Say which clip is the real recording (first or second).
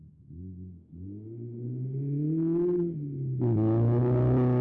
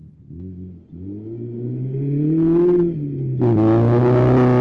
second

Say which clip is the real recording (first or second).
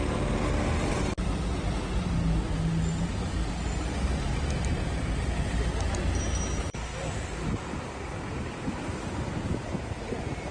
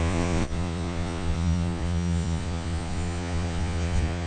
first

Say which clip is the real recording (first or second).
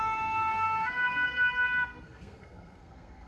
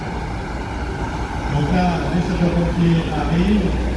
second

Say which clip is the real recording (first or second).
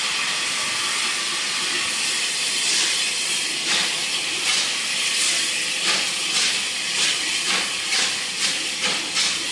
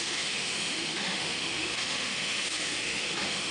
first